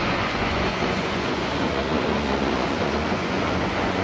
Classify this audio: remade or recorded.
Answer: remade